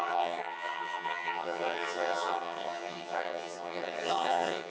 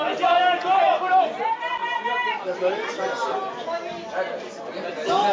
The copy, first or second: first